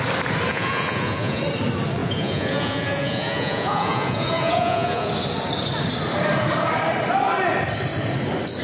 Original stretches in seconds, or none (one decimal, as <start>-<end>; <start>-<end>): 0.0-0.5; 1.4-2.0; 5.1-8.6